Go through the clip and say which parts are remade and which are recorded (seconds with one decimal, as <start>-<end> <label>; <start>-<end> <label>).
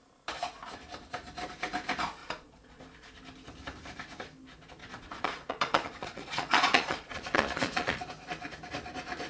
0.0-2.2 recorded; 2.2-2.8 remade; 2.8-4.8 recorded; 4.8-8.0 remade; 8.0-9.3 recorded